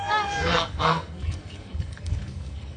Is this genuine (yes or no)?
no